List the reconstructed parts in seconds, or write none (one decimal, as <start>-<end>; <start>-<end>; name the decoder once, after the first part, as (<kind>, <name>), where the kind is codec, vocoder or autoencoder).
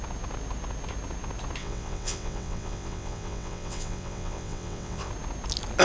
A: 1.6-5.1 (vocoder, WaveNeXt)